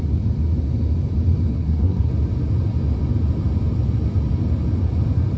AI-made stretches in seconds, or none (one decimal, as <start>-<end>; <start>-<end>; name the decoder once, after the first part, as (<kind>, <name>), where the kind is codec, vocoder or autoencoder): 1.5-2.1 (codec, SNAC)